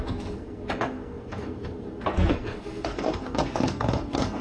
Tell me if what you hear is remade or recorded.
remade